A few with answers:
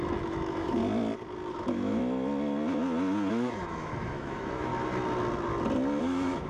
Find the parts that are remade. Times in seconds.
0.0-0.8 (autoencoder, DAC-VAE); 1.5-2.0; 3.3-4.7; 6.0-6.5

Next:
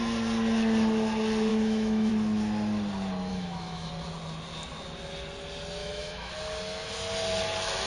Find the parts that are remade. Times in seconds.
1.5-2.1 (autoencoder, DAC-VAE); 3.3-3.9; 5.8-6.3

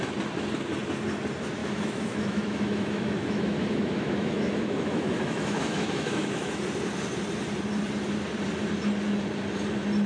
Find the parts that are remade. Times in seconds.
1.6-6.6 (autoencoder, DAC-VAE)

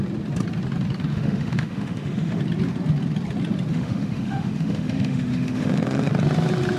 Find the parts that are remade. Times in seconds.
1.1-2.4 (autoencoder, DAC-VAE); 3.7-6.1

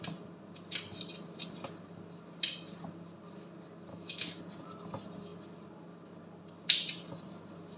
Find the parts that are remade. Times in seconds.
3.9-4.4 (autoencoder, DAC-VAE)